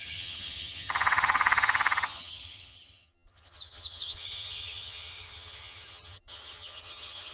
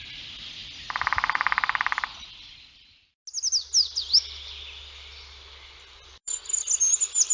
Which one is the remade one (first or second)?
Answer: first